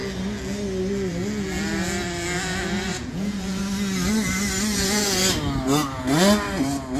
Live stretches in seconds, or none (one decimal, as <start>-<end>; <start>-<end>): 0.0-2.9; 3.6-4.7; 5.2-7.0